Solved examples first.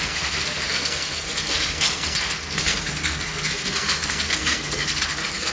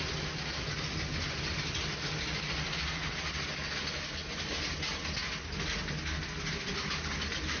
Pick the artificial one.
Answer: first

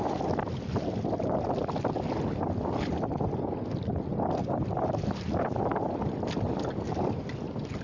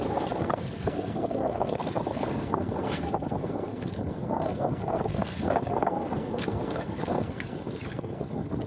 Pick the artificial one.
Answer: second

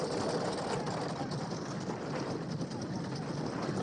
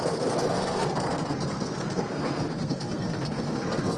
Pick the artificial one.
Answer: second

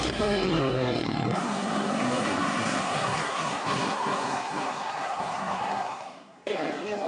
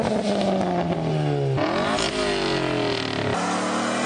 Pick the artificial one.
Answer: first